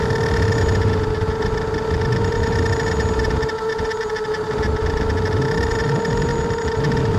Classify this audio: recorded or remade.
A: recorded